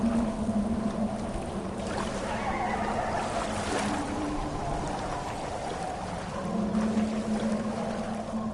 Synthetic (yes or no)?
no